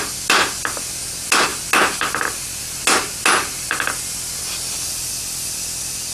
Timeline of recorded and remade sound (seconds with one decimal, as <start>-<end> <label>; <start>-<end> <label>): 0.0-6.1 recorded